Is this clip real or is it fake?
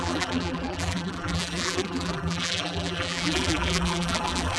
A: fake